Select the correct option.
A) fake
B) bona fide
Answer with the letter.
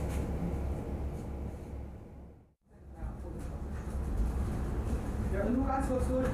B